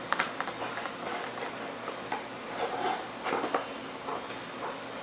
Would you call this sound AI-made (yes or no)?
no